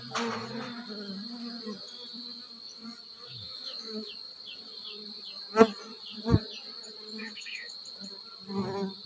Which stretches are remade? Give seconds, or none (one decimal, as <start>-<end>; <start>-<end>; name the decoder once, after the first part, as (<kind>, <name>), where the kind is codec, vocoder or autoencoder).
3.3-4.1 (autoencoder, DAC-VAE); 7.2-7.7